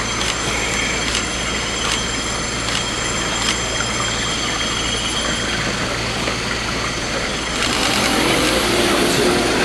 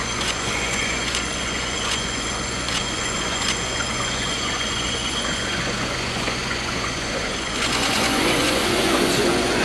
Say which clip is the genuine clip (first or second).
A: first